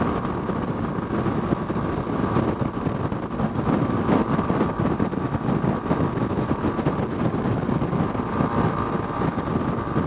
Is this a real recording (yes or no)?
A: yes